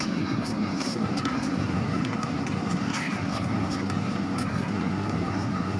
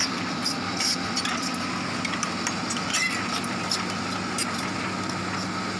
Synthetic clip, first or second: first